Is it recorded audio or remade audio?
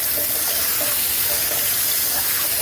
recorded